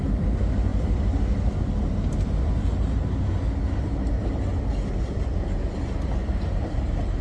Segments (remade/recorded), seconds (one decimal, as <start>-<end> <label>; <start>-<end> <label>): 0.0-7.2 recorded